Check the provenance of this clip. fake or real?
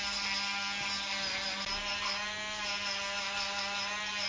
real